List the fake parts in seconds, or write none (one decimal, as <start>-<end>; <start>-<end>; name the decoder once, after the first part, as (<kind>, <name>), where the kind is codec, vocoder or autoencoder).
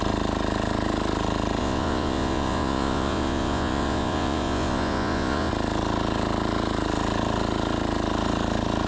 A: 1.6-5.5 (vocoder, Vocos)